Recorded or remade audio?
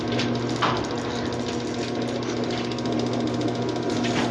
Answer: recorded